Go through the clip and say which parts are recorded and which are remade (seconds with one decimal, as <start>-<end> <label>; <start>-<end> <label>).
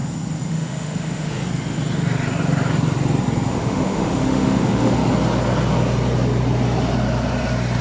0.0-0.5 recorded; 0.5-1.4 remade; 1.4-3.5 recorded; 3.5-5.0 remade; 5.0-7.8 recorded